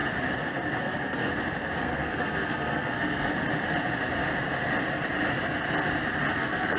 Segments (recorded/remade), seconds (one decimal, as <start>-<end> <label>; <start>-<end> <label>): 0.0-0.8 recorded; 0.8-1.3 remade; 1.3-1.8 recorded; 1.8-3.3 remade; 3.3-6.3 recorded; 6.3-6.8 remade